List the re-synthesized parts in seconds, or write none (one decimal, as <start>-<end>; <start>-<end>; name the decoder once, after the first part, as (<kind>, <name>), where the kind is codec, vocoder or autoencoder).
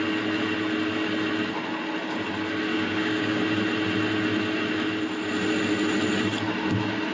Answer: 2.7-3.4 (codec, DAC)